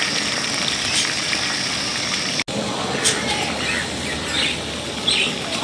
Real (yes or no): yes